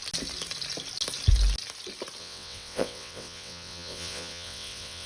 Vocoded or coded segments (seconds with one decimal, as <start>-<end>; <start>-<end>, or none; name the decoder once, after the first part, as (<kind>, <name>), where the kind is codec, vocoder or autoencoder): 2.2-5.1 (vocoder, WaveNeXt)